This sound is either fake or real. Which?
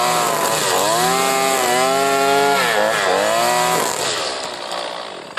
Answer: real